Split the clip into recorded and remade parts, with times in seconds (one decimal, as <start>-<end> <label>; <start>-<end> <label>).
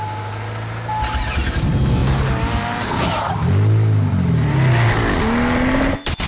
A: 0.0-6.3 recorded